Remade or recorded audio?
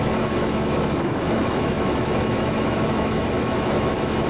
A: remade